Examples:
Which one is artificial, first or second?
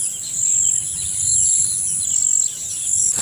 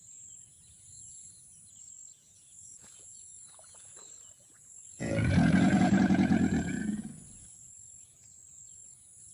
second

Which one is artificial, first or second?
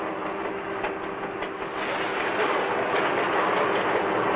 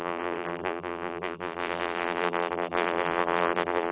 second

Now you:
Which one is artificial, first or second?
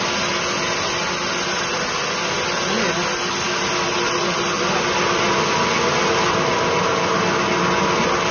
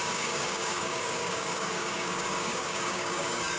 second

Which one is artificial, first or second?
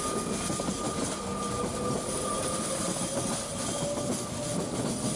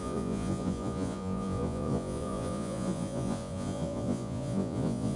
second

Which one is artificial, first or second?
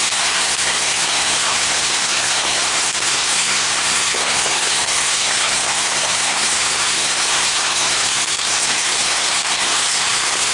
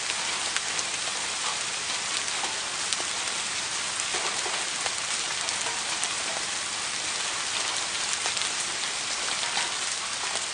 first